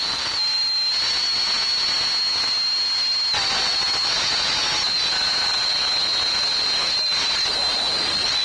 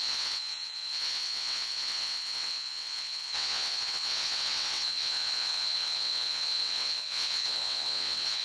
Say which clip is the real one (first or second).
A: first